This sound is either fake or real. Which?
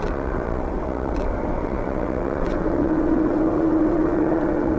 fake